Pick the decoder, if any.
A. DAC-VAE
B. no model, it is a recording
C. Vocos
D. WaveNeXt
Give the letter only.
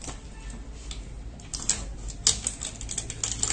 B